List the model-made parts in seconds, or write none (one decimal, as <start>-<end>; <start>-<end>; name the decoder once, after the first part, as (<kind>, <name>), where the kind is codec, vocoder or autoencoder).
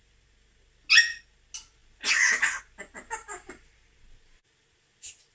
none